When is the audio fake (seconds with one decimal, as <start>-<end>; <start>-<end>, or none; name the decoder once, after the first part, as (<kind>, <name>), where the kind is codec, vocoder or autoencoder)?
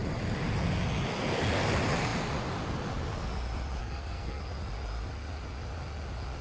3.8-4.4 (codec, SNAC)